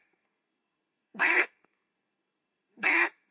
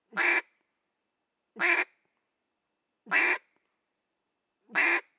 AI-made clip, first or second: first